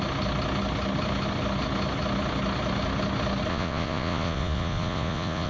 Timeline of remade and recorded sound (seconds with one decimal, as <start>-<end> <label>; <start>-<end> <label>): 0.0-3.5 recorded; 3.5-5.5 remade